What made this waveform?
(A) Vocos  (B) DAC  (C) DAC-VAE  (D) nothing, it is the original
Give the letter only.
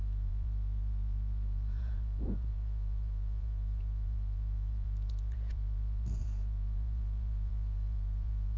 A